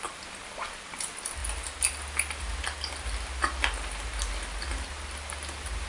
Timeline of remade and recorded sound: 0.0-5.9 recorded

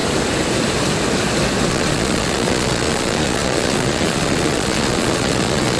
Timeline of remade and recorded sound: 0.0-1.7 recorded; 1.7-5.8 remade

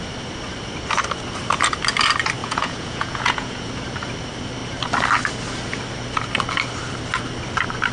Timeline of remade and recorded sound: 0.0-2.4 recorded; 2.4-3.7 remade; 3.7-7.9 recorded

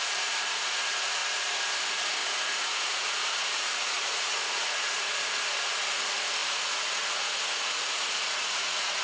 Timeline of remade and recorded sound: 0.0-1.2 remade; 1.2-1.8 recorded; 1.8-9.0 remade

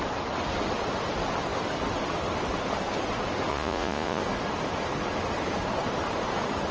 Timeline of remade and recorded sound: 0.0-3.5 recorded; 3.5-4.2 remade; 4.2-6.7 recorded